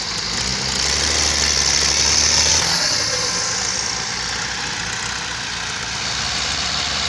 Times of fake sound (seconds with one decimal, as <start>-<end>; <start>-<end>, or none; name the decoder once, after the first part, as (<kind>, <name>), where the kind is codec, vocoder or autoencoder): none